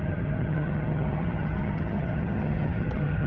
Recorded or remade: remade